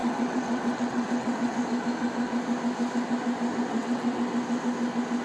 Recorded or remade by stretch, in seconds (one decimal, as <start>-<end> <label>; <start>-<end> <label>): 0.0-1.6 remade; 1.6-3.7 recorded; 3.7-4.2 remade; 4.2-5.2 recorded